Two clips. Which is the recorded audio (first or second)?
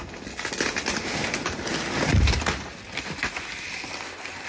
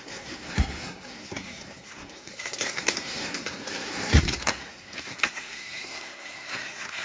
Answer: first